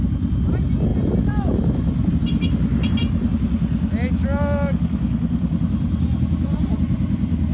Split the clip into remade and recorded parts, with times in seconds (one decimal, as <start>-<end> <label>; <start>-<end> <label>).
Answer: 0.0-7.5 recorded